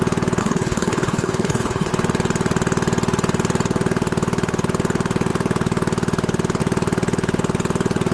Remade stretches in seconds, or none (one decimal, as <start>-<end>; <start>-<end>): 0.4-1.9